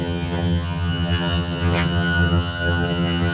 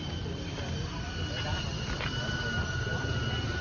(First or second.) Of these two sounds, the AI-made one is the first